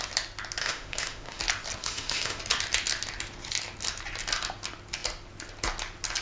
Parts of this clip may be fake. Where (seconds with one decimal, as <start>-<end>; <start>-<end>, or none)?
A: 0.6-1.4; 1.8-2.4